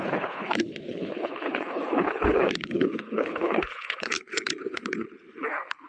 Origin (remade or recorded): remade